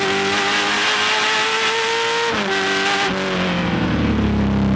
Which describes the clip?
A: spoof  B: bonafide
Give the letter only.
B